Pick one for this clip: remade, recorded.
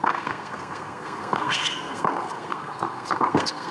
remade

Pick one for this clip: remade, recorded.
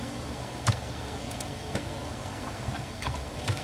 remade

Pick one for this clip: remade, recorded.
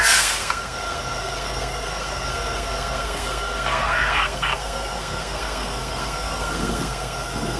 remade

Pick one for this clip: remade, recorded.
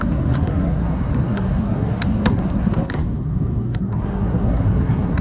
remade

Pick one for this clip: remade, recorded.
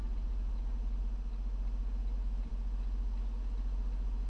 recorded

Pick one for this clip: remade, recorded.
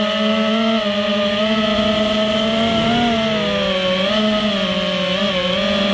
recorded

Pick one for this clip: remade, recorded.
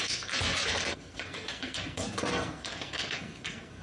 remade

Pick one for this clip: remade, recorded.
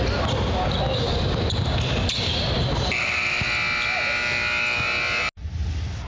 recorded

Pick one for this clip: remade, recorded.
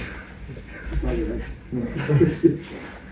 recorded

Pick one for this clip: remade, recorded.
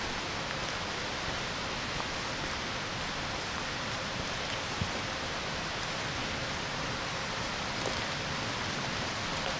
recorded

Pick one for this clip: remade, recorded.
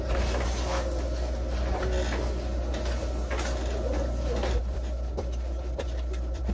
recorded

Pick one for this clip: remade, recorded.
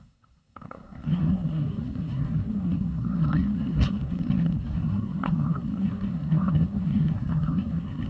remade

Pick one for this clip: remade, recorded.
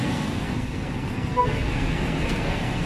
remade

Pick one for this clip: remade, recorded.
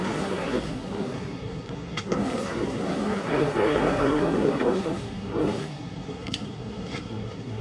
remade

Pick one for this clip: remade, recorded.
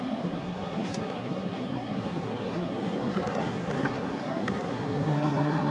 remade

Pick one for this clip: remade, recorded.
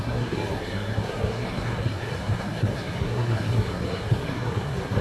remade